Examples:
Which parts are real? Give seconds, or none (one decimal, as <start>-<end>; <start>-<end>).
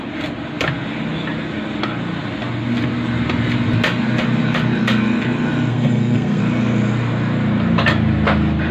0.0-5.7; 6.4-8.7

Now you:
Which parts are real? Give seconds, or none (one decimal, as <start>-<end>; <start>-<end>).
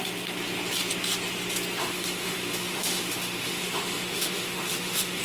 0.0-1.8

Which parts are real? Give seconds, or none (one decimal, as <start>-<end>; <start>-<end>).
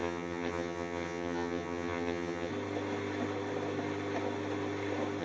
2.5-5.2